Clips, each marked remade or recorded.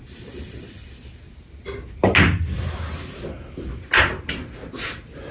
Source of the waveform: recorded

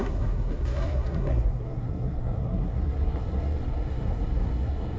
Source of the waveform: remade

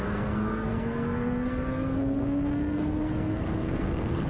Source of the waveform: remade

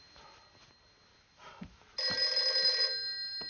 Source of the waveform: recorded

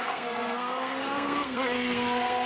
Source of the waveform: remade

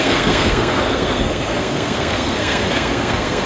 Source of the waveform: remade